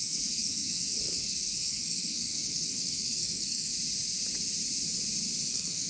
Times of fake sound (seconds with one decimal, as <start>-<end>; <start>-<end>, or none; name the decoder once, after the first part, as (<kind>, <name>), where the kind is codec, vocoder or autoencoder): 0.0-3.7 (codec, SNAC); 5.5-5.9